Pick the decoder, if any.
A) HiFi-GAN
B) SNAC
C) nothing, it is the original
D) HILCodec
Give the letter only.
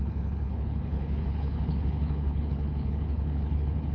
D